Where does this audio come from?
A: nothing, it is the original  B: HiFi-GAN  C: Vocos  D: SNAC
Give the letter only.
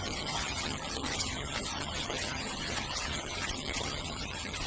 B